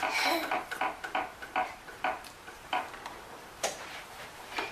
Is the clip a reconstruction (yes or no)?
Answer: yes